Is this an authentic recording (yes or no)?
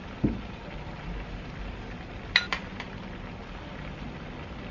yes